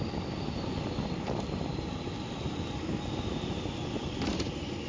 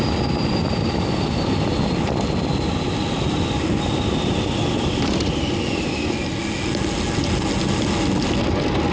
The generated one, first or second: first